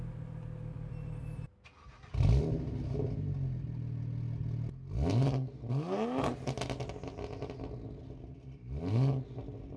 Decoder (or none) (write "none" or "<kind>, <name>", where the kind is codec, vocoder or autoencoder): none